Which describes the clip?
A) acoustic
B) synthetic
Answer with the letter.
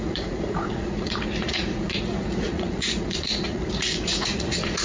B